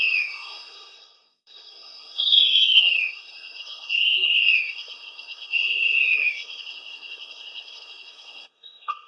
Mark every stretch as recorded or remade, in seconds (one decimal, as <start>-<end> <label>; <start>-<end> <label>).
0.0-9.1 remade